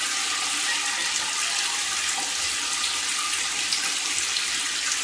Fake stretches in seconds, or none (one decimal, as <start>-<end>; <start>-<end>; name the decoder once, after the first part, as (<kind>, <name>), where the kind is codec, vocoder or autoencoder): none